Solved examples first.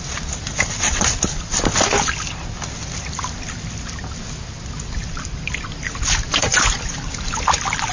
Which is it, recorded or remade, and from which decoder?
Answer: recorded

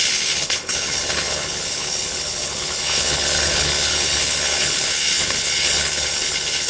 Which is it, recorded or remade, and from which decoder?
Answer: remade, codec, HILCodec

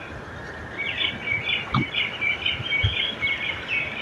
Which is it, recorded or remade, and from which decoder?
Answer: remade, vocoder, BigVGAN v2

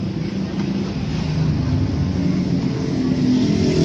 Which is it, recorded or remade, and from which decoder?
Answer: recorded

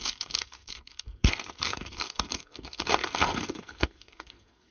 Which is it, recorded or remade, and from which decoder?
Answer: remade, codec, SNAC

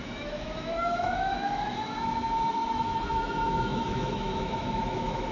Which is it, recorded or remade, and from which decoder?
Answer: remade, autoencoder, DAC-VAE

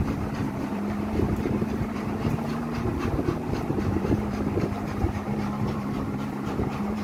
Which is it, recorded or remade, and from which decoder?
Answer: remade, vocoder, BigVGAN v2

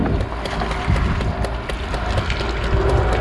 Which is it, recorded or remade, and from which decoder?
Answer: recorded